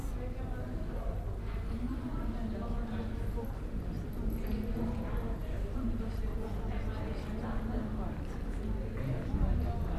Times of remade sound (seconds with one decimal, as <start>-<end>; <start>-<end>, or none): 5.4-6.0